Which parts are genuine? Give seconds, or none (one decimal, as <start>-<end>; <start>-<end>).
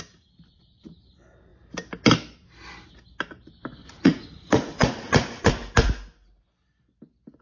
0.0-3.8; 5.5-7.4